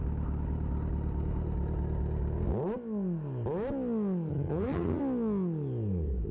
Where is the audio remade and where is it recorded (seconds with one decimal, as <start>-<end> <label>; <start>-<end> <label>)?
0.0-4.3 recorded; 4.3-5.0 remade; 5.0-6.3 recorded